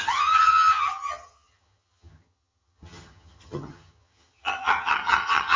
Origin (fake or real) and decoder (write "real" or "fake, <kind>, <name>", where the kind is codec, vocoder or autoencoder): fake, vocoder, HiFi-GAN